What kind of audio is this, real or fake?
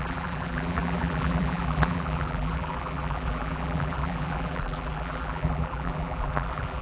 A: fake